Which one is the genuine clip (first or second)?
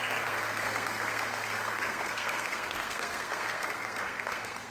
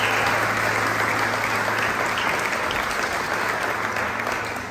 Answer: second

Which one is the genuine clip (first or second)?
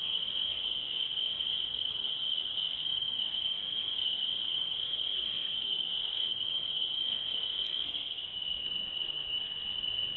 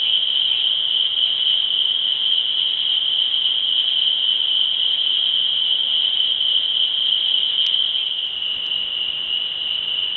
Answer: second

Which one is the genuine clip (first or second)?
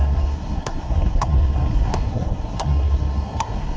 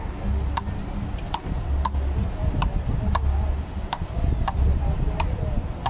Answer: second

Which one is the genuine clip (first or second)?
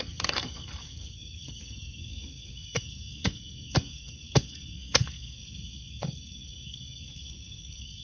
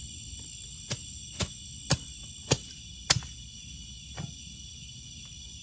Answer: second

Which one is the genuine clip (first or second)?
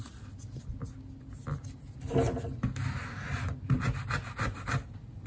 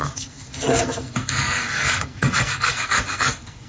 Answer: first